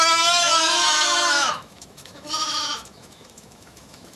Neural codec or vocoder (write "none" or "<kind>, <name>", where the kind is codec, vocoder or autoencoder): autoencoder, DAC-VAE